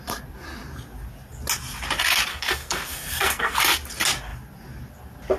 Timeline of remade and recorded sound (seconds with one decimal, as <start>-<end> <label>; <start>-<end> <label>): 0.0-2.3 recorded; 2.3-3.6 remade; 3.6-5.4 recorded